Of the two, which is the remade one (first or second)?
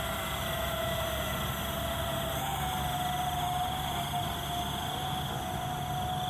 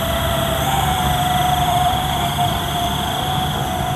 second